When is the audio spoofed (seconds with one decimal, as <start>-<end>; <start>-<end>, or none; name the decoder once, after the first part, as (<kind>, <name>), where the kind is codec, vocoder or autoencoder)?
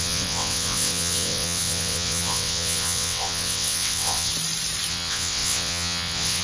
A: 0.0-4.3 (vocoder, WaveNeXt); 4.9-6.4